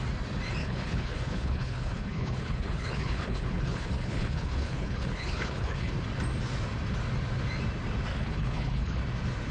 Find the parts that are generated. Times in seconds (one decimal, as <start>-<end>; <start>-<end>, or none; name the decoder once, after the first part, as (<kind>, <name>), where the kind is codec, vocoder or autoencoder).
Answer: 0.6-5.9 (codec, HILCodec); 8.1-9.0